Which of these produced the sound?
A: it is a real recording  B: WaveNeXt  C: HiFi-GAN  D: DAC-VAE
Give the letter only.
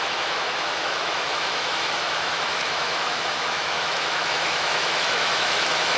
D